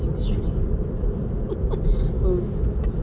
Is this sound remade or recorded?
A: recorded